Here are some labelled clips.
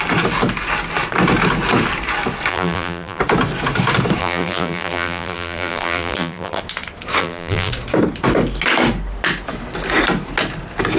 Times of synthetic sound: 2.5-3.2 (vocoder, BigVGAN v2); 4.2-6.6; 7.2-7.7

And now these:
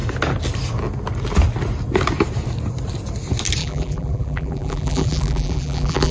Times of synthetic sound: 3.6-6.1 (vocoder, BigVGAN v2)

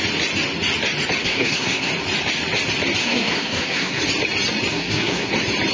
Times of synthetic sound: 1.2-1.9 (codec, SNAC); 3.0-4.0; 4.7-5.3